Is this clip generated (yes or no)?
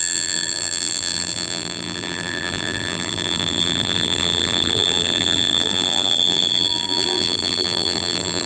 yes